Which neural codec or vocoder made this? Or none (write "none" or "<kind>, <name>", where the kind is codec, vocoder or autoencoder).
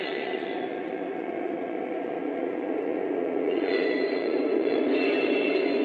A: vocoder, Vocos